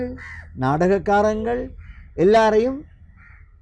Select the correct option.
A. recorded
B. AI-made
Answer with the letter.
A